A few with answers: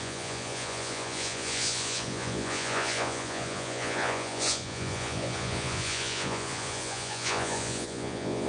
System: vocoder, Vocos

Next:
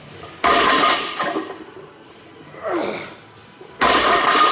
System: none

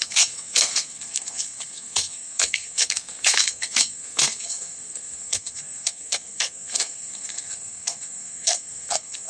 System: codec, SNAC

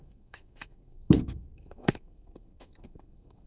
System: codec, SNAC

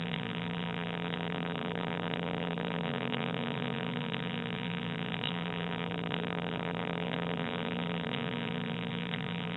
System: vocoder, BigVGAN v2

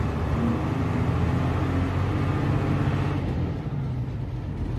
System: none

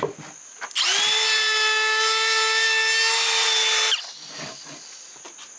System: none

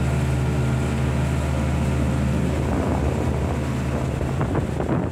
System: none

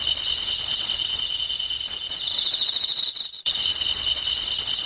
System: vocoder, Vocos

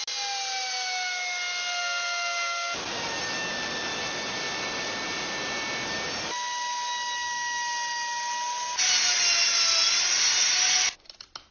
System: none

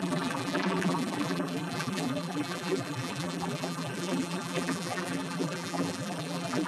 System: vocoder, BigVGAN v2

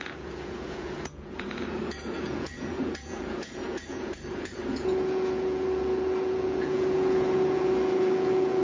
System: vocoder, Vocos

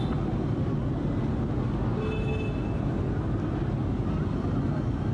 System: none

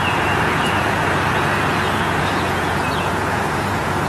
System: vocoder, Vocos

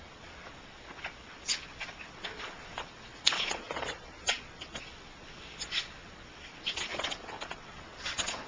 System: vocoder, Vocos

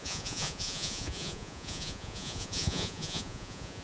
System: vocoder, Vocos